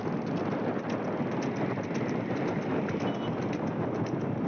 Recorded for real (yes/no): yes